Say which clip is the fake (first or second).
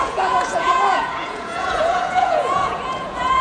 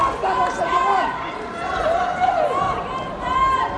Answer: first